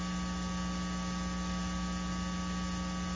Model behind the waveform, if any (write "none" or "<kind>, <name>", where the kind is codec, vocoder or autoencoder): none